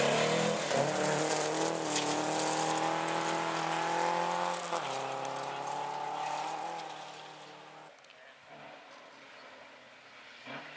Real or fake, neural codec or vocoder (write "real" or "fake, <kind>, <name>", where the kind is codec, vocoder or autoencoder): real